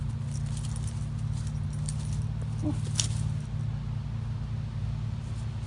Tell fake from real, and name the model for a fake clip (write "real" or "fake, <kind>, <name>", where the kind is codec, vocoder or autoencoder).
real